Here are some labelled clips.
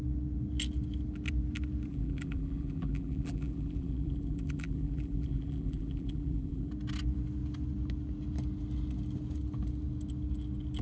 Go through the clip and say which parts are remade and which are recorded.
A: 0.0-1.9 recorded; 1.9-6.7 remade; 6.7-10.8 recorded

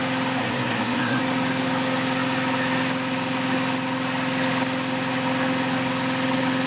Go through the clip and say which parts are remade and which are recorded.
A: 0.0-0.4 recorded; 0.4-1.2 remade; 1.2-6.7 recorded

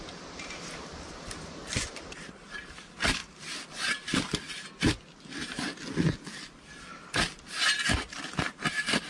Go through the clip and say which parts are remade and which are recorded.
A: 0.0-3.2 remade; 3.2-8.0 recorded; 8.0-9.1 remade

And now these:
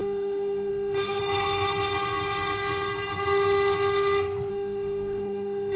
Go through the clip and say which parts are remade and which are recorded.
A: 0.0-1.2 remade; 1.2-4.5 recorded; 4.5-5.8 remade

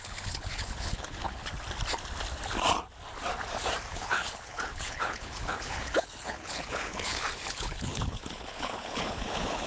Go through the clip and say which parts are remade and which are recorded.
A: 0.0-1.4 remade; 1.4-3.9 recorded; 3.9-9.7 remade

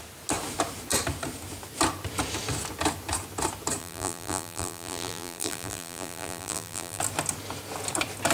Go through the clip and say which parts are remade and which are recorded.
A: 0.0-3.8 recorded; 3.8-7.0 remade; 7.0-8.3 recorded